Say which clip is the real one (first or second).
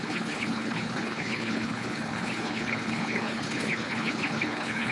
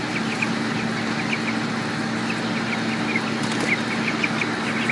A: second